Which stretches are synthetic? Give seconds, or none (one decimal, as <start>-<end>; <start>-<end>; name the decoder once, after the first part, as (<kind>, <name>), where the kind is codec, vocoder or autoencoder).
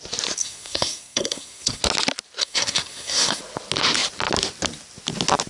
0.4-1.8 (codec, SNAC); 2.4-3.4